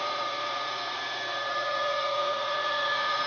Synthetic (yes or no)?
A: yes